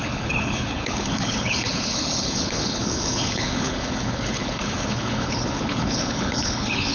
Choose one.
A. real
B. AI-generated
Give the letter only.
B